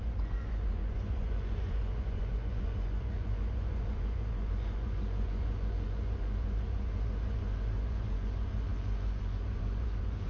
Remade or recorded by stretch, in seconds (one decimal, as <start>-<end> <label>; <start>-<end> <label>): 0.0-10.3 remade